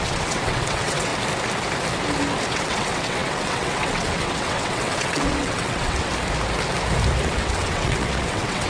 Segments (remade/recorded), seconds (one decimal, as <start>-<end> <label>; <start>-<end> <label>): 0.0-1.1 remade; 1.1-2.5 recorded; 2.5-6.1 remade; 6.1-7.2 recorded; 7.2-8.7 remade